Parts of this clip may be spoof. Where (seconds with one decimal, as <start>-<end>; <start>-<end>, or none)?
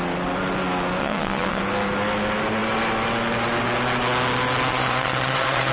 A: 1.0-1.6; 4.7-5.7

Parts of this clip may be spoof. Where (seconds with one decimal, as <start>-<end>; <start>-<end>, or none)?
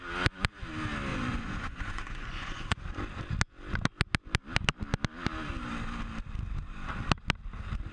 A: 1.1-2.8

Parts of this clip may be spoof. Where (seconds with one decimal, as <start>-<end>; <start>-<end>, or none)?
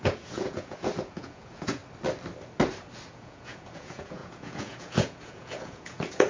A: 0.0-1.8; 3.1-6.3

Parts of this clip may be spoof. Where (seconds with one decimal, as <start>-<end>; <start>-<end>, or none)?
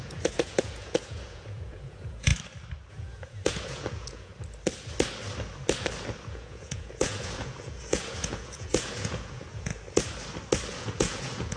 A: 0.0-2.3; 2.9-4.3; 6.3-9.7; 10.7-11.6